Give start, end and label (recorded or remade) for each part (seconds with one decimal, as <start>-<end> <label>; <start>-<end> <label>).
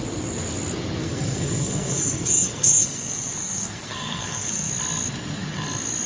0.0-1.0 recorded; 1.0-4.7 remade; 4.7-6.1 recorded